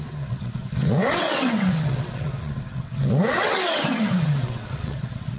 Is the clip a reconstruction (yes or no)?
yes